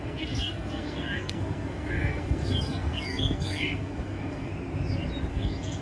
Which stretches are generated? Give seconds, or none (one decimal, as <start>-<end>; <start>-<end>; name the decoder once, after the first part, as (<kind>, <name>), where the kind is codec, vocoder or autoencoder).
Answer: 0.0-4.5 (codec, SNAC); 5.3-5.8